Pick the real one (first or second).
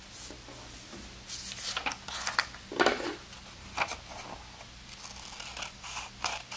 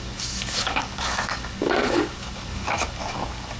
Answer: first